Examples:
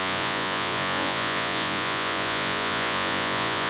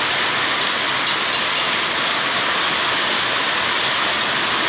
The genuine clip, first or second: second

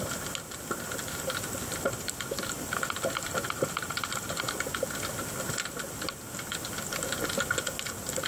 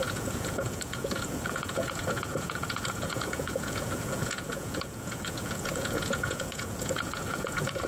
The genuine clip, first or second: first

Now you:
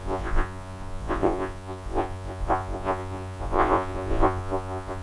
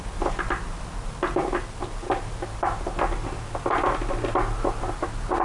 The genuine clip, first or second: second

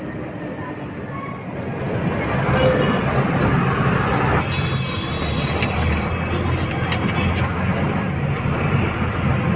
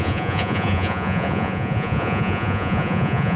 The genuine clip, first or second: first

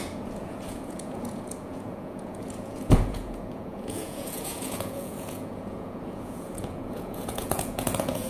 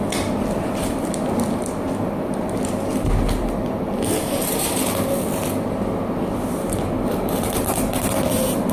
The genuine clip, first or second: second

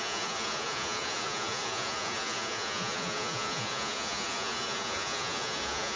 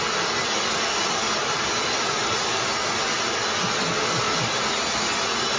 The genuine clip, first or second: second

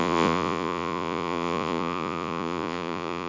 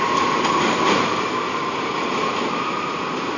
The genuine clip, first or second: second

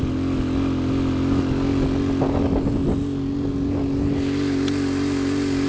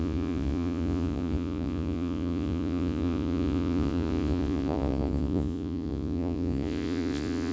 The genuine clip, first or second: first